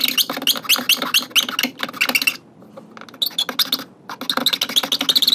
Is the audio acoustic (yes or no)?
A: yes